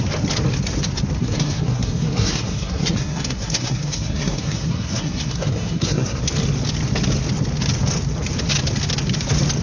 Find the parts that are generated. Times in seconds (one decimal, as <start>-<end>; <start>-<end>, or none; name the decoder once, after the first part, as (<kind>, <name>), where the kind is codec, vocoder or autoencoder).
1.2-6.2 (codec, SNAC)